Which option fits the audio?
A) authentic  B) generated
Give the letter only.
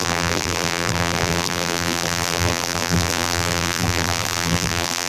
B